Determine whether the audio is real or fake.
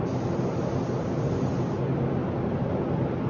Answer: real